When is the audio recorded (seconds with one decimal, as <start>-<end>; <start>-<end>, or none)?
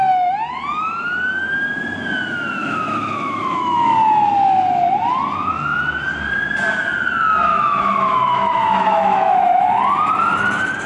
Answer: 0.0-2.6; 3.9-7.5; 9.8-10.9